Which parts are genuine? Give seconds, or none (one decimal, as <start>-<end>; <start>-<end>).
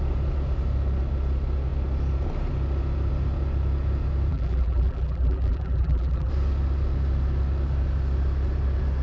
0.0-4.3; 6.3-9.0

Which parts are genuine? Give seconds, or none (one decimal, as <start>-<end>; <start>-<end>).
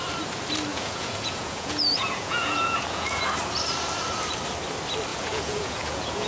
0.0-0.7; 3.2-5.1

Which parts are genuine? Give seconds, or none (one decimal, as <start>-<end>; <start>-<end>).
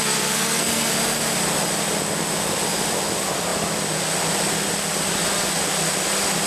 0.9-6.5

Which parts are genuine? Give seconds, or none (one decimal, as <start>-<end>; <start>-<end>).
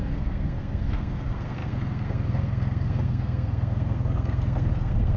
none